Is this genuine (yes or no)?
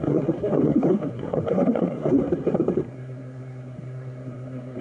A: no